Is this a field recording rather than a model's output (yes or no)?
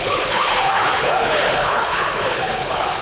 no